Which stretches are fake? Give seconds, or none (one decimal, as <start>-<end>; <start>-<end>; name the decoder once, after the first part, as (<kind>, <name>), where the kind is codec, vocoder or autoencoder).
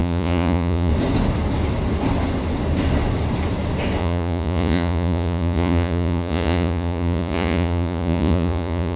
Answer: 0.0-0.9 (vocoder, Vocos); 4.0-9.0